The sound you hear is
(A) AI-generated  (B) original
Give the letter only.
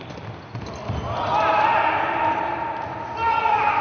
B